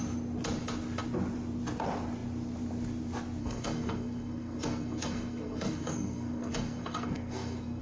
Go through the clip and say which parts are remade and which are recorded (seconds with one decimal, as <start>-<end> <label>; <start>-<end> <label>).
0.0-3.4 recorded; 3.4-7.8 remade